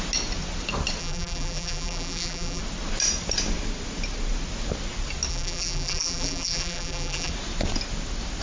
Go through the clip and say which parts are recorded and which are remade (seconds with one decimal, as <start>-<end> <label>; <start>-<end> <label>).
0.0-1.0 recorded; 1.0-2.6 remade; 2.6-5.3 recorded; 5.3-7.3 remade; 7.3-8.4 recorded